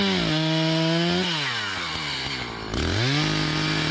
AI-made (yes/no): no